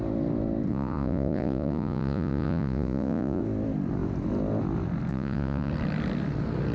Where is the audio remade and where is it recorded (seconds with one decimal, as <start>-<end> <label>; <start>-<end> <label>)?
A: 0.0-0.7 recorded; 0.7-3.4 remade; 3.4-5.1 recorded; 5.1-5.7 remade; 5.7-6.7 recorded